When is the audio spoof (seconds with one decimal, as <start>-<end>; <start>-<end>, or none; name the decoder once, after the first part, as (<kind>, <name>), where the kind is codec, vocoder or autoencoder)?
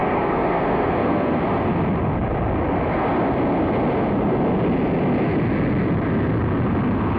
0.0-1.4 (codec, SNAC)